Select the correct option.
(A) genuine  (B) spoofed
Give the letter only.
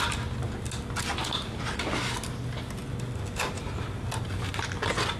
A